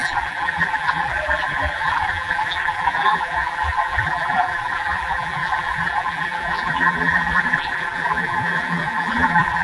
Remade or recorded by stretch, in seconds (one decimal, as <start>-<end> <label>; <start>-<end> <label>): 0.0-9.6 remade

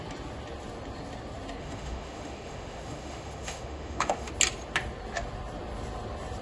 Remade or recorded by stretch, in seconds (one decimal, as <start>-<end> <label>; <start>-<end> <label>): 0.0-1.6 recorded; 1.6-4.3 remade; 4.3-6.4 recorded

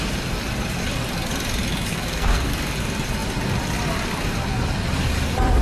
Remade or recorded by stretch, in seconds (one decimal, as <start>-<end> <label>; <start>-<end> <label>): 0.0-1.9 recorded; 1.9-2.5 remade; 2.5-5.6 recorded

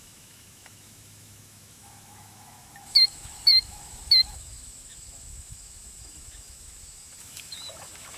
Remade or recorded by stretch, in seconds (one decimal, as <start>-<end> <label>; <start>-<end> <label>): 0.0-8.2 remade

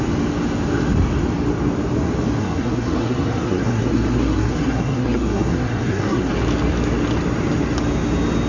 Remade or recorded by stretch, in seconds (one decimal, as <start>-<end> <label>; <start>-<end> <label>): 0.0-2.4 recorded; 2.4-6.3 remade; 6.3-8.5 recorded

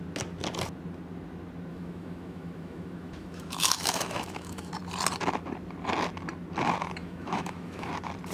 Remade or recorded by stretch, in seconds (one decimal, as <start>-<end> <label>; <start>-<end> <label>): 0.0-1.7 recorded; 1.7-4.7 remade; 4.7-7.0 recorded; 7.0-7.9 remade; 7.9-8.3 recorded

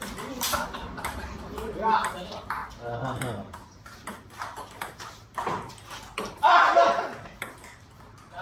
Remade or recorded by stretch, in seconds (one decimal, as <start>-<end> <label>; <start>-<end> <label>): 0.0-2.6 remade; 2.6-7.4 recorded; 7.4-8.4 remade